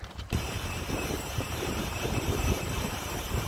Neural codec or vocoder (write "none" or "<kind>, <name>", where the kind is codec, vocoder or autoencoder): vocoder, BigVGAN v2